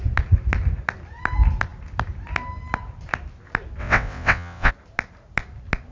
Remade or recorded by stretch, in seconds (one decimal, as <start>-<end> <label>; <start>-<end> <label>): 0.0-3.8 recorded; 3.8-4.7 remade; 4.7-5.9 recorded